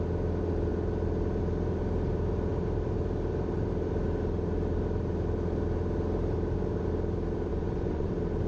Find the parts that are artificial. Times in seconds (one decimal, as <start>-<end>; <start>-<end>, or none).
7.5-8.1